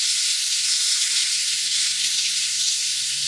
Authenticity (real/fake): fake